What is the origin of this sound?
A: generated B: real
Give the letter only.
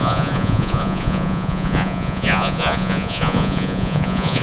A